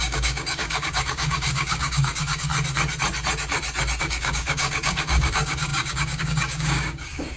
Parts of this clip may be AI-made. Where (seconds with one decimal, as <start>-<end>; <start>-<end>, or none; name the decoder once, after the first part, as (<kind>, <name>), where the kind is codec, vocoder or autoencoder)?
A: 0.0-2.5 (codec, DAC); 4.0-7.4